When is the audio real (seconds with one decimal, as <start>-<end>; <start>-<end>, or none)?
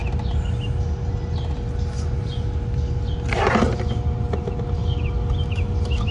0.0-6.1